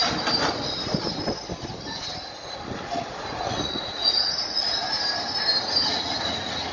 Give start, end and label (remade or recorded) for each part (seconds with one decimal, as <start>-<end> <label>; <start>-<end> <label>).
0.0-1.8 recorded; 1.8-4.8 remade; 4.8-5.9 recorded; 5.9-6.7 remade